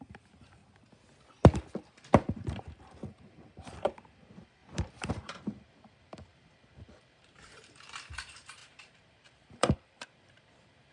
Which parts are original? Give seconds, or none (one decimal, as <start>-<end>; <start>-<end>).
0.6-1.9; 4.6-5.1